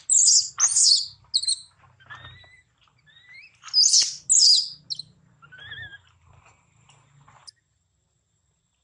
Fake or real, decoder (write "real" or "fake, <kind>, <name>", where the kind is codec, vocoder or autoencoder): real